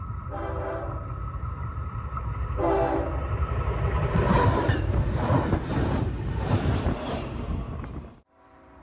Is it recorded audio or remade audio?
remade